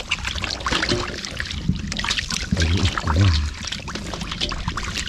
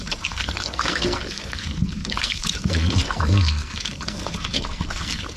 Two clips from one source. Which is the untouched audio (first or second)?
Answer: first